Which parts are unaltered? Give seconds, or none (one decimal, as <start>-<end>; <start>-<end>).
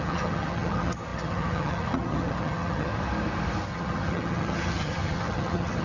2.9-3.7